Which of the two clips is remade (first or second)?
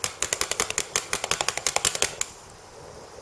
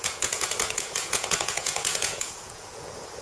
second